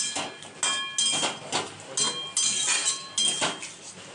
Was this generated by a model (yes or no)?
no